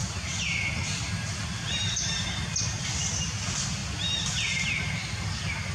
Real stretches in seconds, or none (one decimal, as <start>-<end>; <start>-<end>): 0.0-5.7